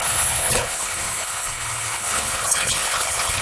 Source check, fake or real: fake